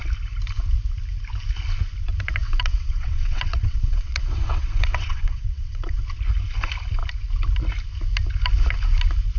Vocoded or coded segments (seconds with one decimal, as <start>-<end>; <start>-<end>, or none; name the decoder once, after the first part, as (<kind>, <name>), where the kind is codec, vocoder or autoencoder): 2.4-6.0 (vocoder, WaveNeXt)